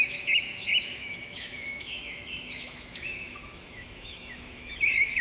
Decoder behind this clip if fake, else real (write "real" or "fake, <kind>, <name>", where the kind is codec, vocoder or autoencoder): fake, autoencoder, DAC-VAE